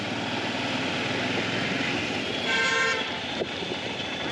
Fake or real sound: real